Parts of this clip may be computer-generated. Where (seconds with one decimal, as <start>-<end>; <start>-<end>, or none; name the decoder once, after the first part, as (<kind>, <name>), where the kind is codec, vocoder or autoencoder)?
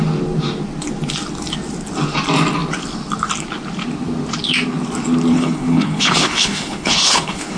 5.3-7.6 (codec, HILCodec)